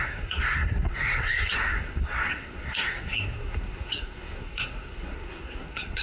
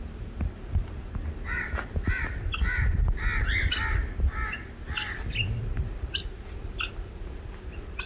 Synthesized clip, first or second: first